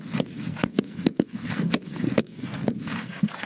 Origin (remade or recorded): remade